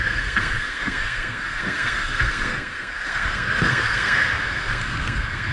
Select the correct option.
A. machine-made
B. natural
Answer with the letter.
A